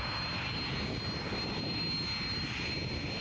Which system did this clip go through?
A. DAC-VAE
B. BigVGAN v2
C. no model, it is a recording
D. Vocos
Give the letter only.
C